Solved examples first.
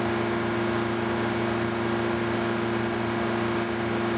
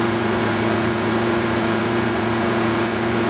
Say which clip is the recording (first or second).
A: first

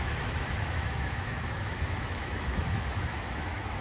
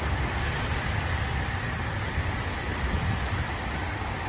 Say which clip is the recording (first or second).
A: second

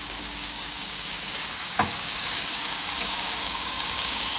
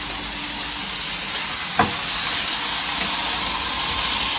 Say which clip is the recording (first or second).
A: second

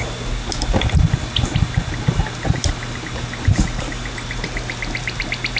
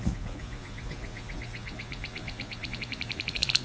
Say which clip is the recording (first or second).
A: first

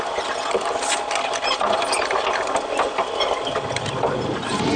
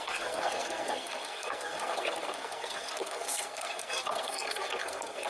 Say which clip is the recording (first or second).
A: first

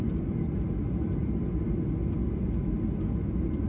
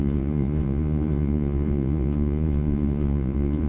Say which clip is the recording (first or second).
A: first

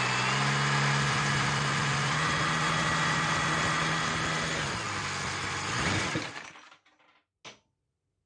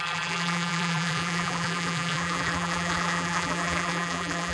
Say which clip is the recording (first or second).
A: first